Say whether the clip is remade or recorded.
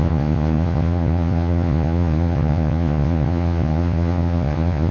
remade